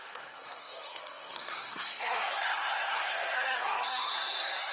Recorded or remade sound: remade